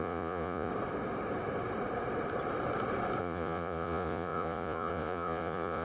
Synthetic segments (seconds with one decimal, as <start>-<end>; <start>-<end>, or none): 0.0-0.7; 3.2-5.8